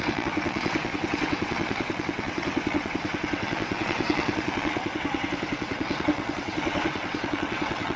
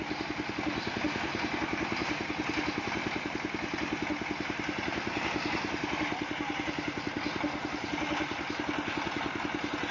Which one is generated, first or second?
first